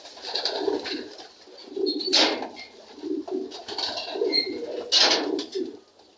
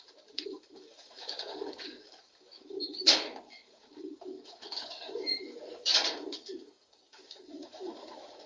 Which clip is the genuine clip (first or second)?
first